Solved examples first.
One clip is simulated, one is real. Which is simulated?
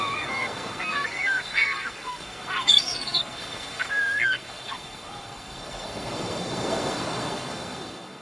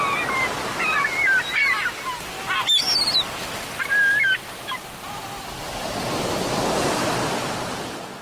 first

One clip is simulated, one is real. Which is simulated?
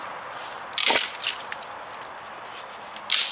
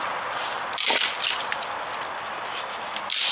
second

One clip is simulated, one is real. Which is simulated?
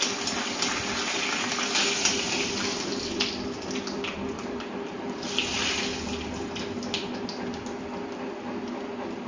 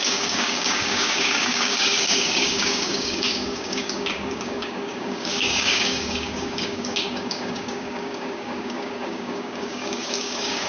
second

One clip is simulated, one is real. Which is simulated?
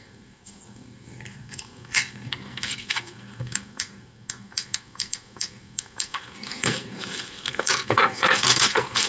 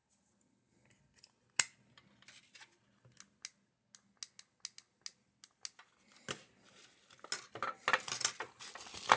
first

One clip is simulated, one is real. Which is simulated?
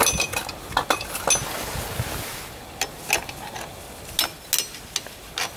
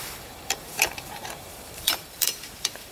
second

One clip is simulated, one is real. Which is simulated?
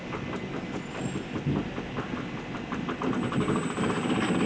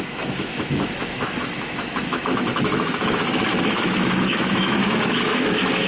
second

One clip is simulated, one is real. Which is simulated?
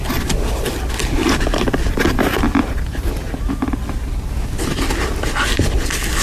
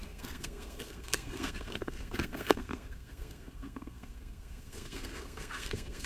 second